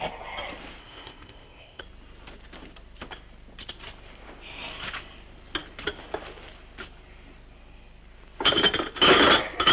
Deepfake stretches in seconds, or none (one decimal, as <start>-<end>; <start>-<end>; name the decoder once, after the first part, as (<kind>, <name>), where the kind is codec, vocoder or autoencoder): 0.8-1.8 (codec, ZipCodec)